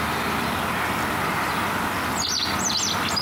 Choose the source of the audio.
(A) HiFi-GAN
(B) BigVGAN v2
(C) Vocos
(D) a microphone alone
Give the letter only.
D